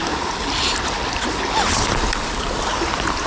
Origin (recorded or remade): recorded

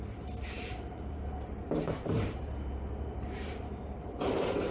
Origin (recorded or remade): remade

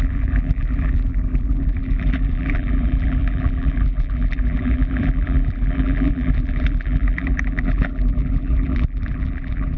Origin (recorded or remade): remade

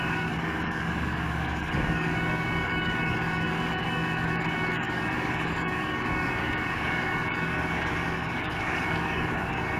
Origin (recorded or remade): remade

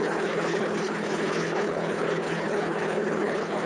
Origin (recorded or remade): remade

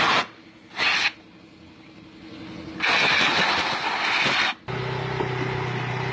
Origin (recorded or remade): recorded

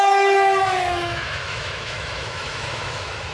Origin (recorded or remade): remade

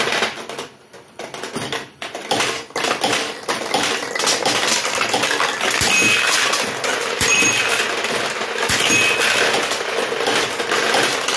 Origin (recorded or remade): recorded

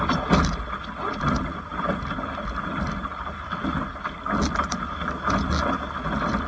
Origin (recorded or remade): recorded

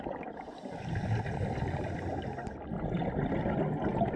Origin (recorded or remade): recorded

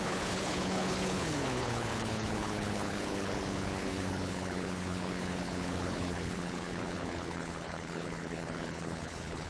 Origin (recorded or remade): remade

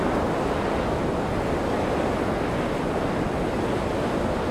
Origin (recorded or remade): recorded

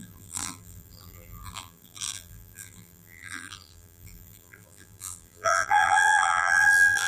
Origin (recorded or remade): remade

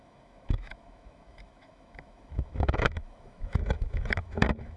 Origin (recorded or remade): remade